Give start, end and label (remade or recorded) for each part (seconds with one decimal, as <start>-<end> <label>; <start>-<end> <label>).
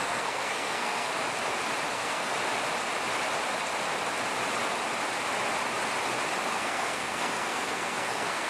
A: 0.0-1.1 remade; 1.1-1.9 recorded; 1.9-2.3 remade; 2.3-6.5 recorded; 6.5-8.5 remade